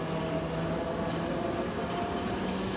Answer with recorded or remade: recorded